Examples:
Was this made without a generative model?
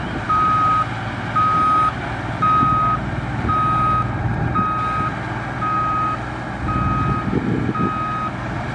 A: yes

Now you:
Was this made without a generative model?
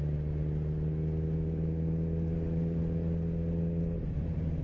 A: yes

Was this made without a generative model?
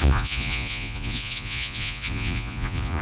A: no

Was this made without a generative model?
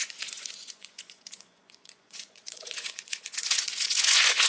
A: no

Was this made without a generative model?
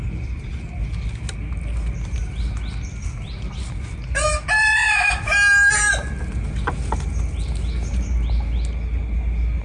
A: yes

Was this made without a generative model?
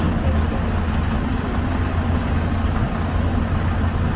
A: yes